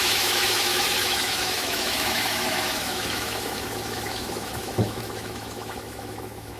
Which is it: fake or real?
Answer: fake